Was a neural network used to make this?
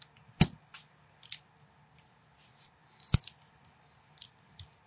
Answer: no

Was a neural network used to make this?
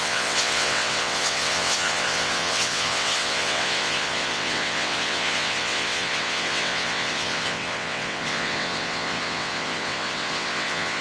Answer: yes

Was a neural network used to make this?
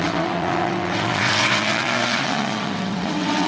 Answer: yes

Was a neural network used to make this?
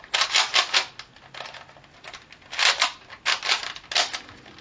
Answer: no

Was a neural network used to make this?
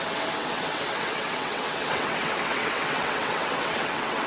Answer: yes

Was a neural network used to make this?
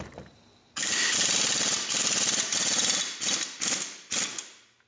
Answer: no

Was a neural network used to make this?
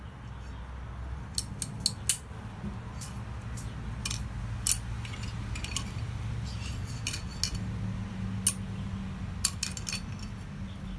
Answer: no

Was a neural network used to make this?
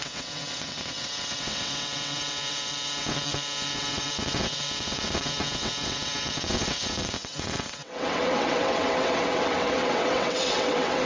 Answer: yes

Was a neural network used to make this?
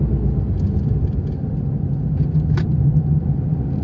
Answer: no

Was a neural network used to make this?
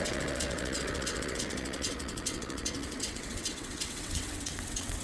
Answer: yes